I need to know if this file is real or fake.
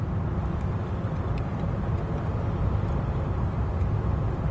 real